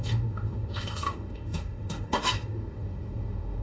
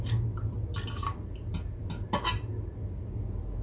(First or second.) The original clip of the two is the second